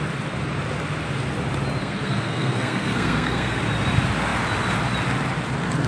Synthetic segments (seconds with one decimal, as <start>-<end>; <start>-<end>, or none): 1.8-3.6